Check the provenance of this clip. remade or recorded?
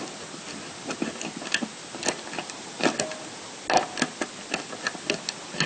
recorded